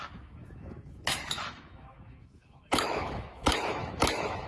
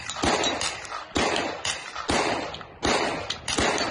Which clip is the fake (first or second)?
first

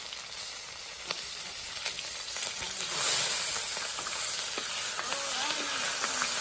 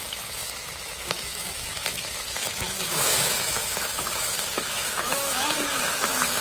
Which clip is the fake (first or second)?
second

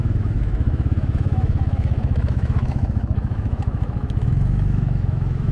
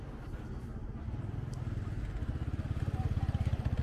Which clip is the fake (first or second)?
first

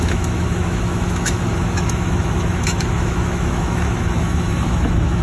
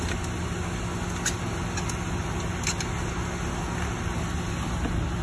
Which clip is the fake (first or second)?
first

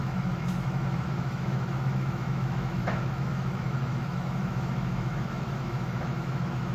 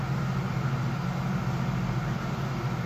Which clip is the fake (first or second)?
first